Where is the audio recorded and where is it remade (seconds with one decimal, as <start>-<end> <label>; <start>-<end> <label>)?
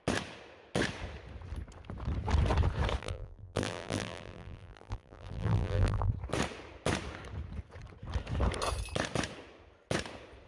0.0-3.0 recorded; 3.0-6.1 remade; 6.1-10.5 recorded